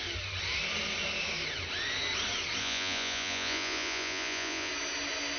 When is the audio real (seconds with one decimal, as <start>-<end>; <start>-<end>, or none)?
0.0-2.6; 4.7-5.4